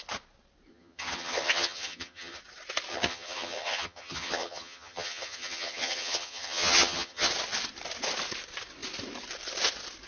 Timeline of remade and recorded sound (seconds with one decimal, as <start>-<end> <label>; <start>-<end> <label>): 0.0-0.7 recorded; 0.7-2.4 remade; 2.4-2.9 recorded; 2.9-7.3 remade; 7.3-10.1 recorded